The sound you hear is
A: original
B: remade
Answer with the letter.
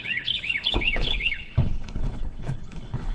B